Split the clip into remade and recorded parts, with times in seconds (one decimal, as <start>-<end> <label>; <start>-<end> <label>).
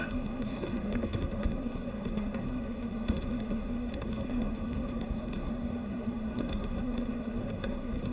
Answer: 0.0-8.1 remade